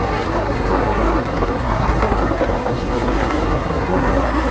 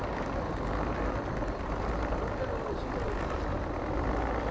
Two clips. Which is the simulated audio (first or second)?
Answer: first